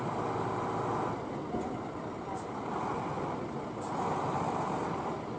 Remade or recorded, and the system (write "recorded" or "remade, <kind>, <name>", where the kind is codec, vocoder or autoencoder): recorded